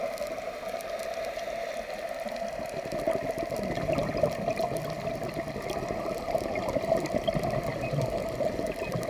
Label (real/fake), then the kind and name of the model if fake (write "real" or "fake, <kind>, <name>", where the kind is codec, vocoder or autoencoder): real